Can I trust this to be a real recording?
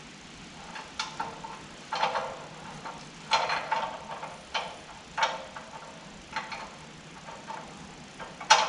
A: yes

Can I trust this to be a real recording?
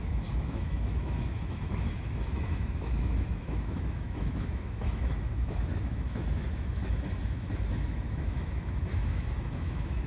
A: no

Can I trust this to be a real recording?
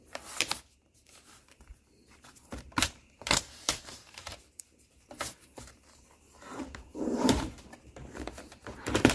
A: no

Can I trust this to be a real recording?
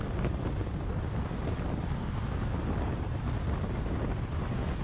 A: yes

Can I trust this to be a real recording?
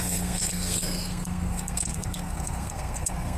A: no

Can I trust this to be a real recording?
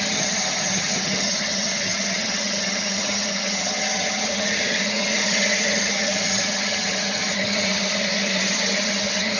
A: no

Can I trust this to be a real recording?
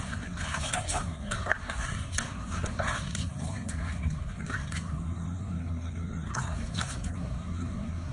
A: no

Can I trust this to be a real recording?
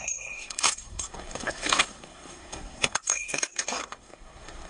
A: no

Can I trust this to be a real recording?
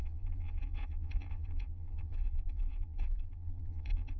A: no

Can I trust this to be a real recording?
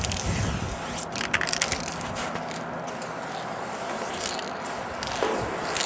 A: yes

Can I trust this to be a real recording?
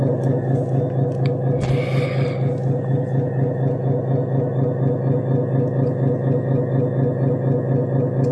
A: yes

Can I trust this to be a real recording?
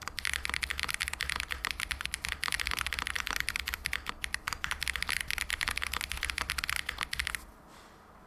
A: yes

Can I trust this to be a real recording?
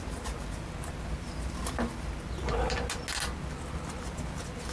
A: yes